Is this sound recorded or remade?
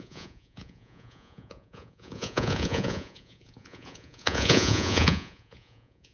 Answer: remade